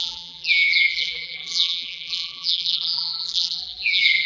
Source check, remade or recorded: remade